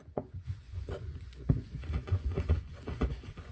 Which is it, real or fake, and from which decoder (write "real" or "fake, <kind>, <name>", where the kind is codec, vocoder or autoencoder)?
fake, vocoder, Vocos